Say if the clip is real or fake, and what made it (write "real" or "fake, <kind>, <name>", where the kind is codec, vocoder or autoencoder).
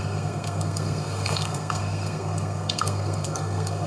fake, codec, SNAC